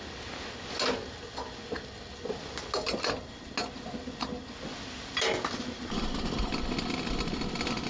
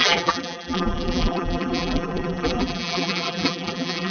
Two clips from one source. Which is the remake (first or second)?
second